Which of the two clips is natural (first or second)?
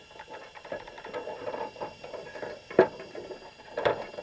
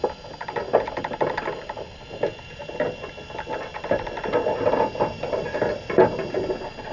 second